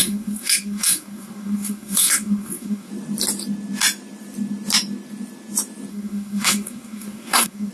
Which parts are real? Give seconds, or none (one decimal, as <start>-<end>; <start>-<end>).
2.9-5.9